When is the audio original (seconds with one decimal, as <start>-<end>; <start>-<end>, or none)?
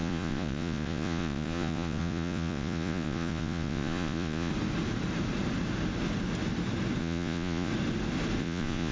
4.5-7.0; 7.7-8.4